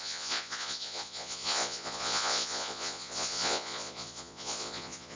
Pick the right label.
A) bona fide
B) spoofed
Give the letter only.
B